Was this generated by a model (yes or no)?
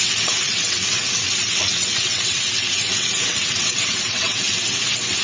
yes